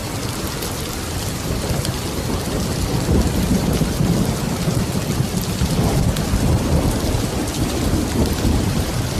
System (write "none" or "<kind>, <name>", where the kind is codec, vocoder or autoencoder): none